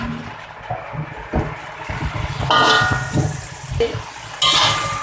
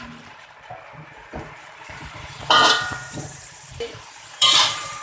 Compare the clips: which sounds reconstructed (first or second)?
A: second